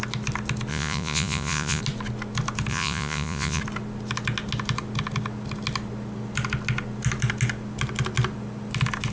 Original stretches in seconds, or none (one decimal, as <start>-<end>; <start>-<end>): 0.0-0.7; 1.8-2.7; 3.6-9.1